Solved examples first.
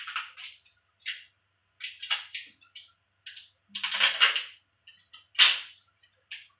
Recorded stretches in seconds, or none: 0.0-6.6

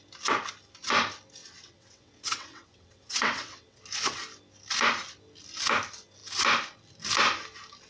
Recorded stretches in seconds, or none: 0.0-1.4; 3.8-7.9

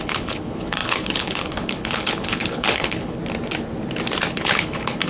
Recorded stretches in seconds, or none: 3.2-4.3

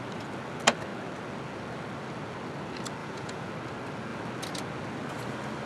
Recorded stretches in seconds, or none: 0.0-3.0; 3.5-5.7

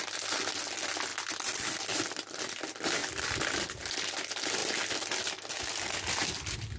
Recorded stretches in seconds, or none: 0.0-6.8

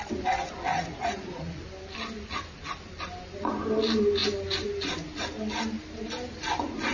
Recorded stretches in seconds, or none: 0.0-0.7; 1.6-6.9

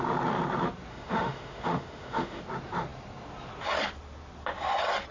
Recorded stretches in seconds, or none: 0.0-0.9; 2.4-5.1